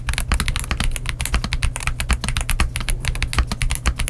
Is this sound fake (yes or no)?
no